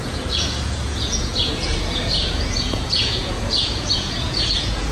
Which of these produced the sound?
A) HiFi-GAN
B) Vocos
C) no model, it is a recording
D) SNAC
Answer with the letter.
B